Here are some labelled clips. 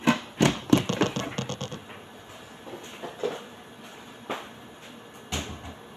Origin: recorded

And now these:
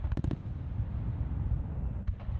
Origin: recorded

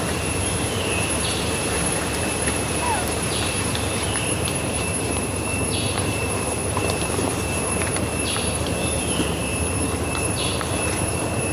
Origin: remade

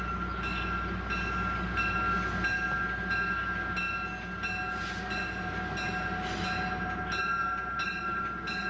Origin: recorded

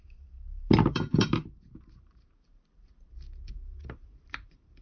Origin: remade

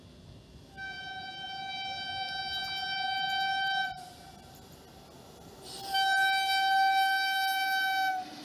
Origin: recorded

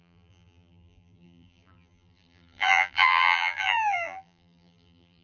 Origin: remade